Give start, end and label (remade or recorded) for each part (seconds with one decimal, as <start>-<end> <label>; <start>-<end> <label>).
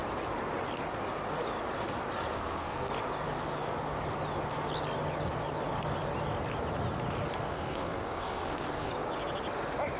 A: 0.0-2.3 recorded; 2.3-2.9 remade; 2.9-7.5 recorded; 7.5-8.9 remade; 8.9-10.0 recorded